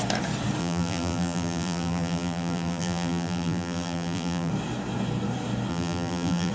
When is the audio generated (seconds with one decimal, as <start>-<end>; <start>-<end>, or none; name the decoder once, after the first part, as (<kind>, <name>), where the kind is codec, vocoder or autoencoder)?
0.6-4.5 (vocoder, BigVGAN v2); 5.7-6.5